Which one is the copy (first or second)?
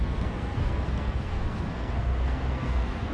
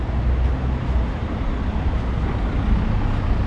first